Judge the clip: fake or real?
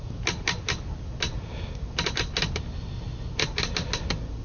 real